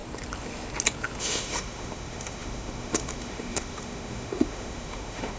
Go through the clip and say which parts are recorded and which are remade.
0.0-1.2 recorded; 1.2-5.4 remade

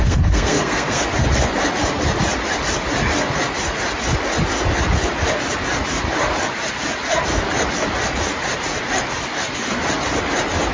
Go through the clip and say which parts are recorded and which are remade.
0.0-1.0 remade; 1.0-10.7 recorded

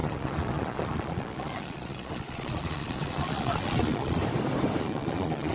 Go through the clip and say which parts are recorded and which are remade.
0.0-4.2 remade; 4.2-4.8 recorded; 4.8-5.5 remade

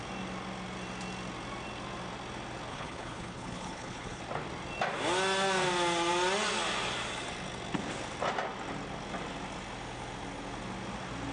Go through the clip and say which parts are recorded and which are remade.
0.0-2.7 recorded; 2.7-4.2 remade; 4.2-11.3 recorded

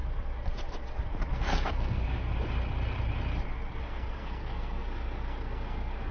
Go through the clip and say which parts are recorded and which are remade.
0.0-1.3 recorded; 1.3-2.3 remade; 2.3-3.8 recorded; 3.8-6.1 remade

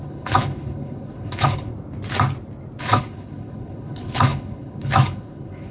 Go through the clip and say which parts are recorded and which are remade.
0.0-1.7 remade; 1.7-2.8 recorded; 2.8-5.7 remade

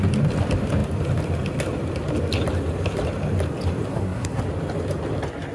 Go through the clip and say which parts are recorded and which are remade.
0.0-3.9 recorded; 3.9-4.4 remade; 4.4-5.5 recorded